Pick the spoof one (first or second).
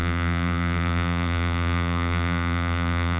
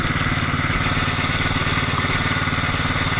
first